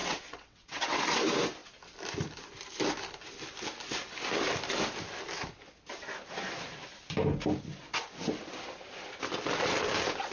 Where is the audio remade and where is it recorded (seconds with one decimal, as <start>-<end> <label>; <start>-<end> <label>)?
0.0-1.0 remade; 1.0-10.3 recorded